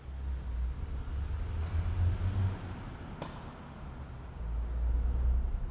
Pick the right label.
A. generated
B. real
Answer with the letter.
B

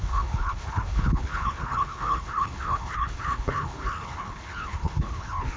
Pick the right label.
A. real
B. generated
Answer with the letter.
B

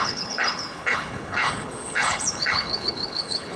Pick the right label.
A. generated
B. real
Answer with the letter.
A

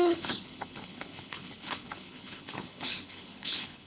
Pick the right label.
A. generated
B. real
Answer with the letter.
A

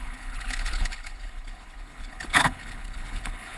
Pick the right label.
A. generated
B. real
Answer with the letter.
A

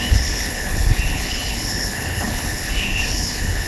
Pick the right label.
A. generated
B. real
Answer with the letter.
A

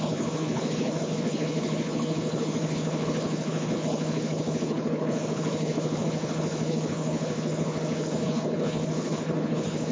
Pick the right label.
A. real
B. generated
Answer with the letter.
B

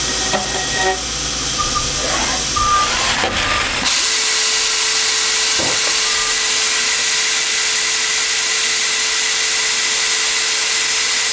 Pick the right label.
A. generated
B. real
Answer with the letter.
B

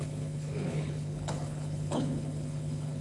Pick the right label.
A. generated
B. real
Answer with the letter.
A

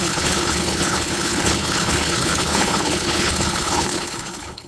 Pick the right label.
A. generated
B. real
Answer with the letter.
A